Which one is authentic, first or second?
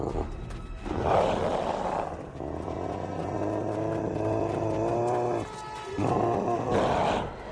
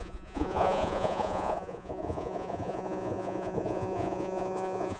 first